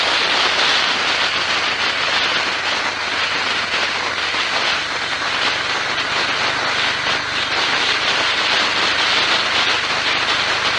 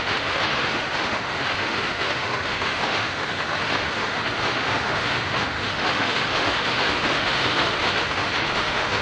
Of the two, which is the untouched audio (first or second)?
first